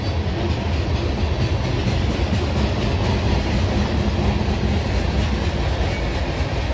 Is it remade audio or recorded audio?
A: recorded